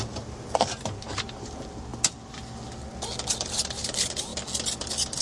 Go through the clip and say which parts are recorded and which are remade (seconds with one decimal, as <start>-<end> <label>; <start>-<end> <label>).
0.0-1.9 remade; 1.9-3.3 recorded; 3.3-4.3 remade; 4.3-5.2 recorded